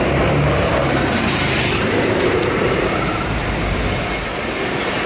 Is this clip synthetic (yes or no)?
yes